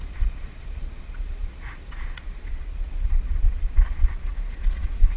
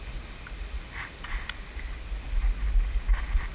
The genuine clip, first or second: second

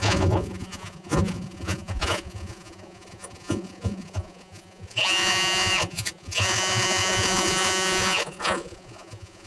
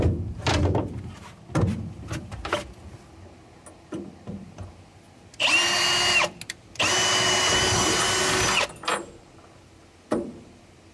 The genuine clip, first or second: second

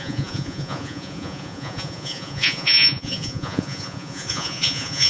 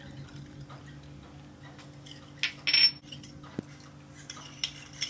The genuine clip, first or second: second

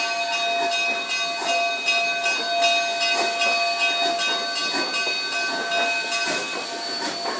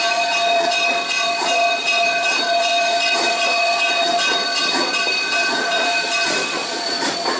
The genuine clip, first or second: first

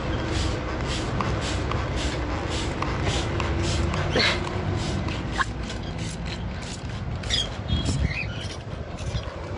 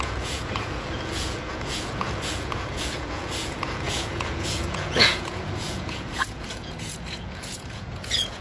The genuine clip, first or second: first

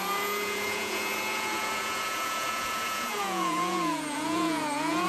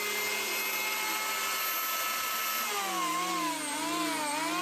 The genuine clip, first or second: second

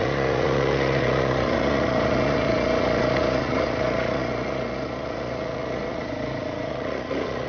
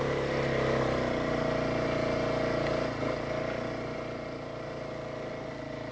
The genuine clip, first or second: second